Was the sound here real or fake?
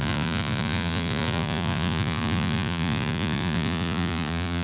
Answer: fake